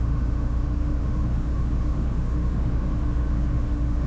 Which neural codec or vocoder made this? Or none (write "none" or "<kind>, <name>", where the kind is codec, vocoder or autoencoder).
autoencoder, DAC-VAE